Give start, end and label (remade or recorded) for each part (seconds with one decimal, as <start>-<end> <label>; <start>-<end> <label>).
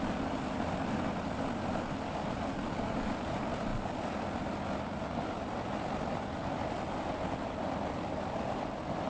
0.0-3.7 recorded; 3.7-4.2 remade; 4.2-9.1 recorded